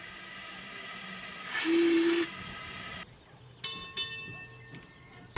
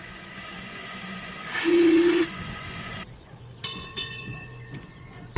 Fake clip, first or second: second